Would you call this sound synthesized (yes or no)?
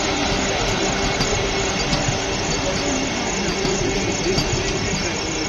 no